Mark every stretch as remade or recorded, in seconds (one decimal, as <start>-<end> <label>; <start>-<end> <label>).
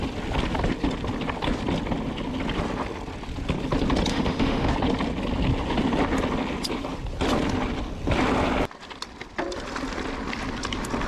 0.0-4.1 recorded; 4.1-4.7 remade; 4.7-11.1 recorded